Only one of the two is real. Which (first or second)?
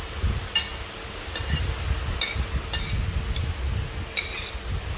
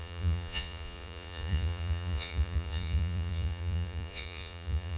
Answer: first